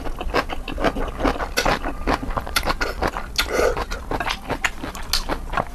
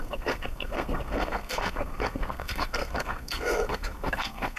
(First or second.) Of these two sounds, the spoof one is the second